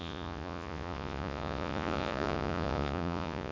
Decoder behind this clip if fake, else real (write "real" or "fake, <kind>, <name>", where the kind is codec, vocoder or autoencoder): fake, vocoder, Vocos